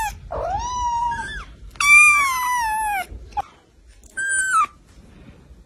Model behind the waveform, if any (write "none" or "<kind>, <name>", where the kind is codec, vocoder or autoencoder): none